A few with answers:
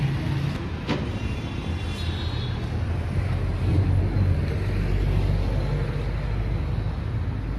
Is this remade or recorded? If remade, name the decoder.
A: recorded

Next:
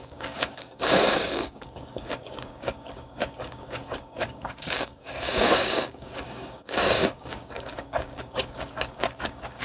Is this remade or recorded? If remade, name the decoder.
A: remade, codec, DAC